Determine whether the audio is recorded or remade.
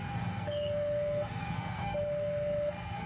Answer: remade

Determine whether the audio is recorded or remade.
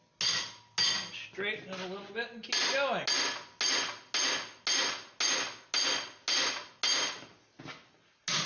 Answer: recorded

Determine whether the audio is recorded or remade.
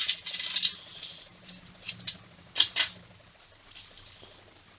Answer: recorded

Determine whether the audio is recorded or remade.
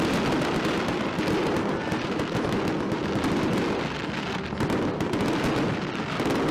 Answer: recorded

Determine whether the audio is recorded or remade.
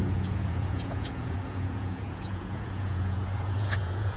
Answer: remade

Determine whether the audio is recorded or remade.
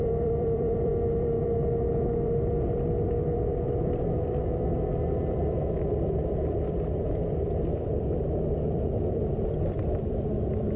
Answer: remade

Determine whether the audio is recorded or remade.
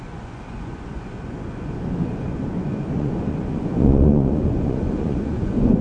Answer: remade